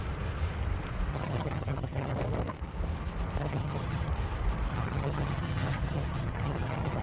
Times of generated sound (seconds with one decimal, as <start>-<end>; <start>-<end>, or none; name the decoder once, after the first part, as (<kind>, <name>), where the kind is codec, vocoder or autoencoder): 1.1-2.1 (vocoder, HiFi-GAN); 3.4-4.1; 4.7-7.0